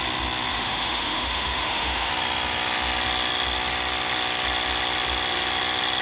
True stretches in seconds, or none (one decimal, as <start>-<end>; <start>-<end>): 0.0-0.5; 2.1-6.0